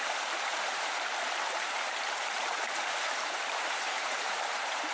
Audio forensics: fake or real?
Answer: fake